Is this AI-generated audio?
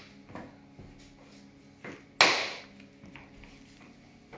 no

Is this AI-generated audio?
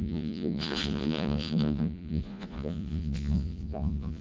yes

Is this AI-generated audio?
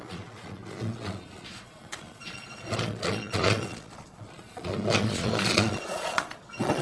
yes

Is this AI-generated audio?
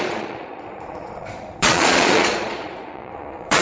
yes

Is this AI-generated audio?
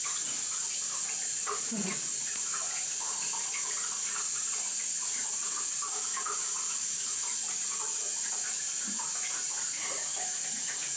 yes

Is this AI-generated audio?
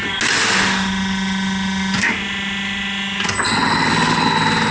no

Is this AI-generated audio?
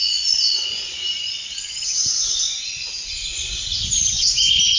yes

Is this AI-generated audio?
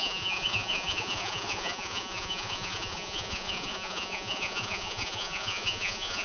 yes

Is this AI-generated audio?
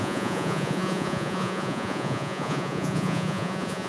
yes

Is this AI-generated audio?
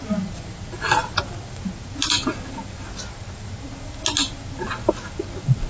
no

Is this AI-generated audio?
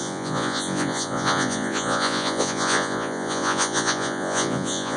yes